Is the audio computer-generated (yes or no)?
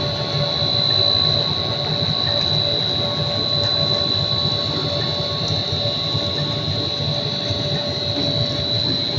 no